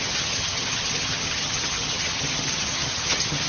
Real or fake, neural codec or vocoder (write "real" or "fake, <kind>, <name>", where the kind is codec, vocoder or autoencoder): fake, vocoder, HiFi-GAN